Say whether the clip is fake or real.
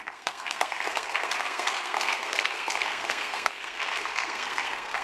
fake